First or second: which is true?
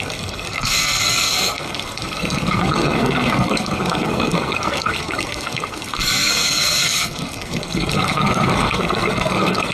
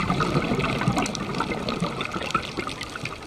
second